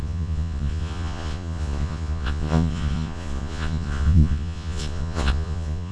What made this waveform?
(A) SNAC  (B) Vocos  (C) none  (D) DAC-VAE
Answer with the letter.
B